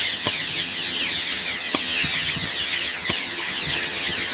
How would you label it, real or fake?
fake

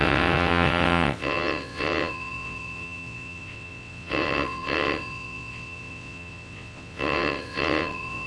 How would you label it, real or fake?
fake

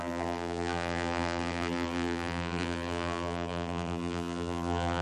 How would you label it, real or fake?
fake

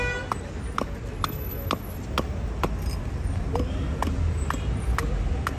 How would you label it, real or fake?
real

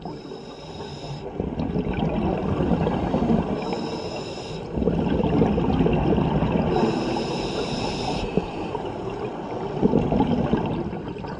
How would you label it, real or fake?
real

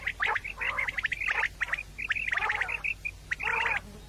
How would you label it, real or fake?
real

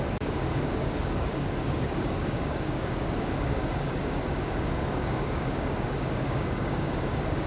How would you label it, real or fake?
fake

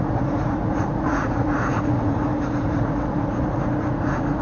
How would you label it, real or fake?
fake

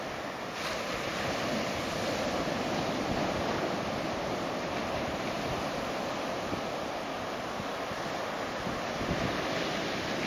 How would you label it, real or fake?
real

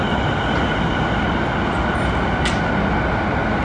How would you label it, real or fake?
real